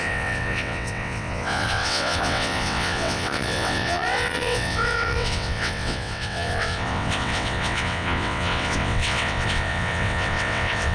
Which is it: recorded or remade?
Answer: remade